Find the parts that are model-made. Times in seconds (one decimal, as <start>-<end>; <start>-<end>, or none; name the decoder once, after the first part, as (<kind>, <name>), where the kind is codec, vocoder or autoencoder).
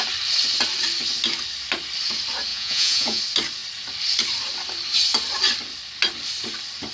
2.5-3.2 (vocoder, Vocos)